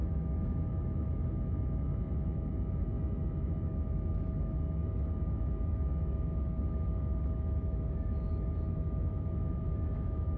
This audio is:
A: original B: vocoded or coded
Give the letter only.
B